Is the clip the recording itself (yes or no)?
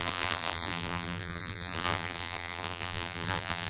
no